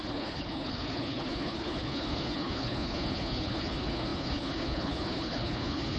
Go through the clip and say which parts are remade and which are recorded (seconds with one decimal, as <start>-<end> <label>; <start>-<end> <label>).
0.0-6.0 remade